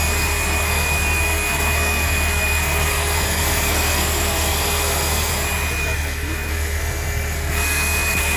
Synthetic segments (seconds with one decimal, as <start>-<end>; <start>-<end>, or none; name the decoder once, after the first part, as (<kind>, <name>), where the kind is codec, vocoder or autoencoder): 0.0-5.3 (codec, SNAC); 5.8-8.4